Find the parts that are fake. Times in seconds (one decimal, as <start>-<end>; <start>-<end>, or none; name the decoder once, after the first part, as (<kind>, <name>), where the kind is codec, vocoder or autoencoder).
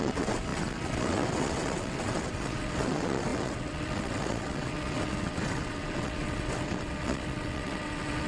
0.0-8.3 (vocoder, WaveNeXt)